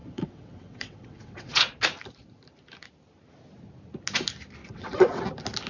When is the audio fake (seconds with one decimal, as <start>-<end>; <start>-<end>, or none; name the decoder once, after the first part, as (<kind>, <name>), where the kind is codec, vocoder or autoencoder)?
0.0-1.6 (vocoder, WaveNeXt); 4.6-5.2